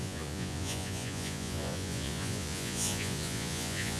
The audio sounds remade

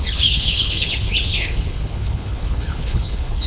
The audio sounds remade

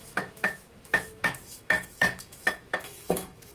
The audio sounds remade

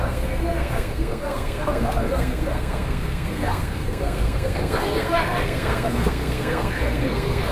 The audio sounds remade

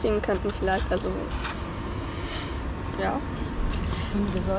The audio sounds recorded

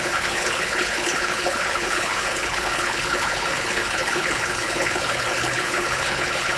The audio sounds remade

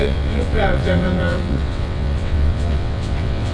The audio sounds remade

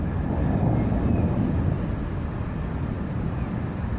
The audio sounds recorded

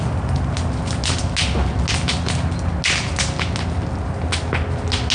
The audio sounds recorded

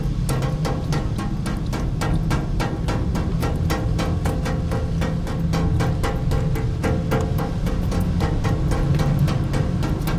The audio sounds recorded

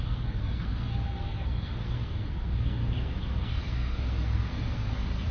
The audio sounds remade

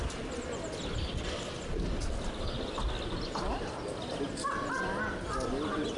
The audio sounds recorded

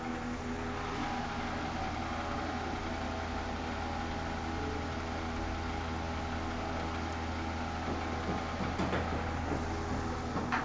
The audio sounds recorded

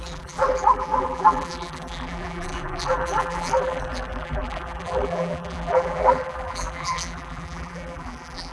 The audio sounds remade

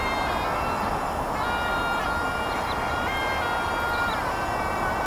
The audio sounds recorded